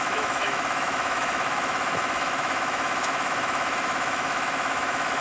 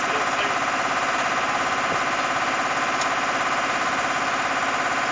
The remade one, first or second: first